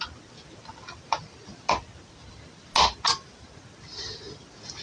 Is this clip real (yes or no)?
yes